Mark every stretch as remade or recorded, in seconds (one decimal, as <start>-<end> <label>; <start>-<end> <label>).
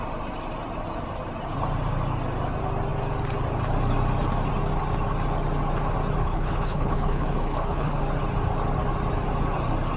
0.0-6.2 recorded; 6.2-8.0 remade; 8.0-10.0 recorded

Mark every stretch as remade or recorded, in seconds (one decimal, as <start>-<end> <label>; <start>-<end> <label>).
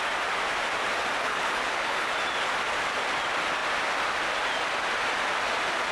0.0-1.2 recorded; 1.2-2.1 remade; 2.1-5.9 recorded